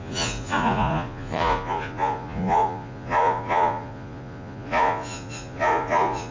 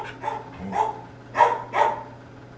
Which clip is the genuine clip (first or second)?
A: second